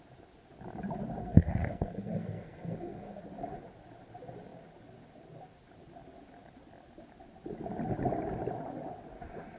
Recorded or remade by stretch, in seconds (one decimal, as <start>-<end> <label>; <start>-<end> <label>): 0.0-1.2 recorded; 1.2-3.2 remade; 3.2-9.6 recorded